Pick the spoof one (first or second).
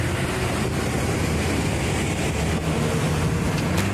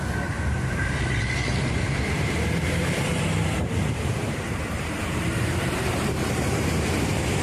second